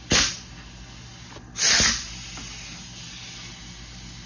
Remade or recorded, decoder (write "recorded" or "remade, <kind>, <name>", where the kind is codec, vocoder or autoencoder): recorded